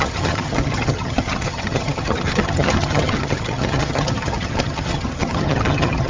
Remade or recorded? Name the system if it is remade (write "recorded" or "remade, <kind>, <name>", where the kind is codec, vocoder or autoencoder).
remade, vocoder, HiFi-GAN